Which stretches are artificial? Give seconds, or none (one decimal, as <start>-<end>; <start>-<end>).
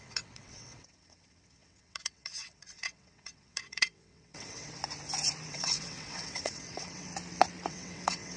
0.0-4.8; 5.5-7.1; 7.7-8.4